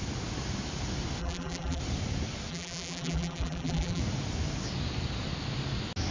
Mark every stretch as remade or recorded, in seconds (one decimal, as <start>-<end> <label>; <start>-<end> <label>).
0.0-1.2 recorded; 1.2-1.8 remade; 1.8-2.5 recorded; 2.5-4.0 remade; 4.0-6.1 recorded